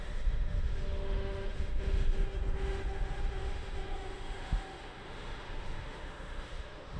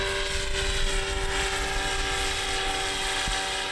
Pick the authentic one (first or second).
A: second